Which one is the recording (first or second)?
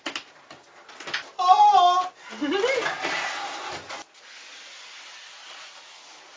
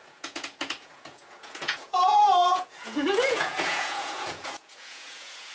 first